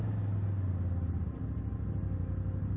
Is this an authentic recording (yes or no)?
yes